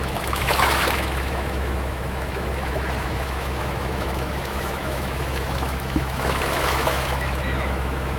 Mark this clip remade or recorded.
remade